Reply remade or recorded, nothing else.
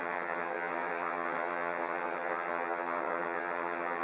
remade